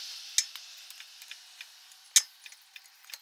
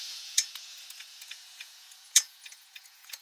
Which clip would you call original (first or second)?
first